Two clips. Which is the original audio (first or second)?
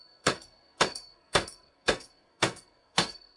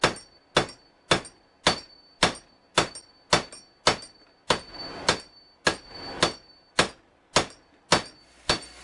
second